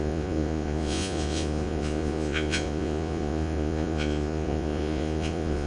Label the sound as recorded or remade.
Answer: remade